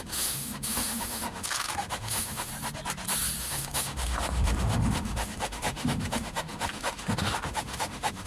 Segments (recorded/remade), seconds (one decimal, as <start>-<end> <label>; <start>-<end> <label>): 0.0-2.5 remade; 2.5-3.4 recorded; 3.4-8.3 remade